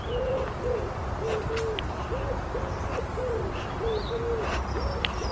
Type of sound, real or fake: real